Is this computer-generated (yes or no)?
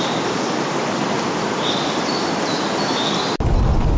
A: no